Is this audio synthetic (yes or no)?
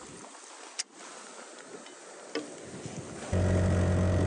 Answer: no